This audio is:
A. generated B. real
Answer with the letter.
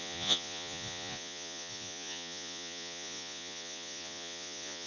A